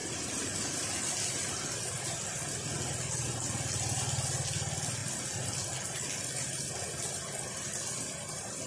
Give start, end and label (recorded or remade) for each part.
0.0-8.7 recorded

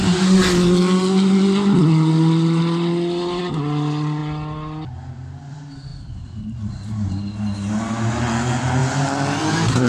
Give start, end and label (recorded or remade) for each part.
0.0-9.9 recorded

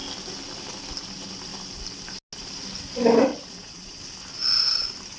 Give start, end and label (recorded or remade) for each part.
0.0-3.3 recorded; 3.3-4.0 remade; 4.0-5.2 recorded

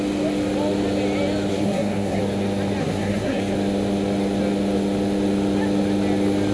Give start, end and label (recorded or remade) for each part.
0.0-1.5 recorded; 1.5-2.2 remade; 2.2-2.8 recorded; 2.8-3.4 remade; 3.4-6.5 recorded